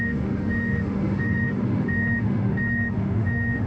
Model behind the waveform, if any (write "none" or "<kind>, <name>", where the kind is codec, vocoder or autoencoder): autoencoder, DAC-VAE